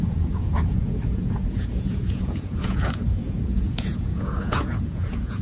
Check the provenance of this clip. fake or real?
fake